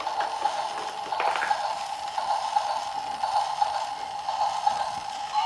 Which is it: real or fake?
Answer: real